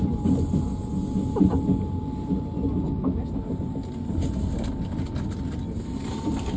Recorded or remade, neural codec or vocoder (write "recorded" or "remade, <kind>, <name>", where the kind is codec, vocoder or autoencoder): recorded